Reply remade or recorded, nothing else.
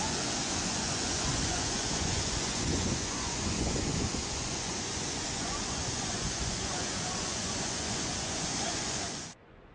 remade